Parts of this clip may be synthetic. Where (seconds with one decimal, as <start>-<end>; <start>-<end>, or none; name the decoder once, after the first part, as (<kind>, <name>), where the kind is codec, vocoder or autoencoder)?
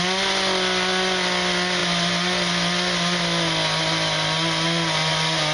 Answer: none